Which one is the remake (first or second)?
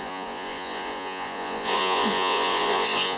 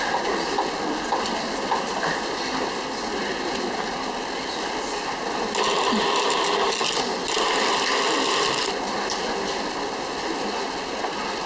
first